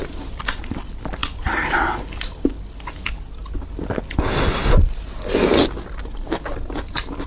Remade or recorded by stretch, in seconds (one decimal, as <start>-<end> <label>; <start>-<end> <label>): 0.0-7.3 recorded